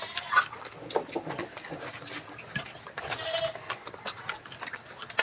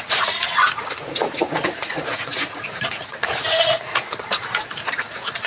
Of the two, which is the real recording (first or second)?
first